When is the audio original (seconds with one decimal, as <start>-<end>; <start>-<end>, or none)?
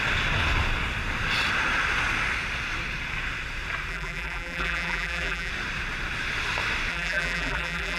0.0-3.9; 5.5-6.9